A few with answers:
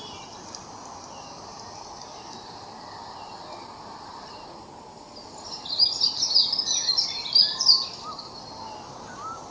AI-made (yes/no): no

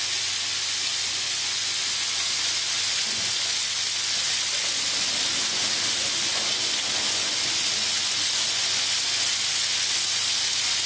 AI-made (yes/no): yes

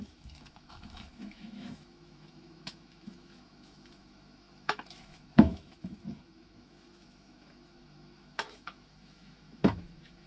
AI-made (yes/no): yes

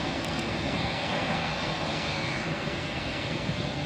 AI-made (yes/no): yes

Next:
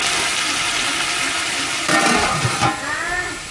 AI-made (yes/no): no